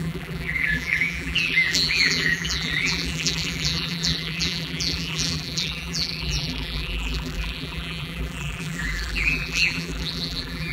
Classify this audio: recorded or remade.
remade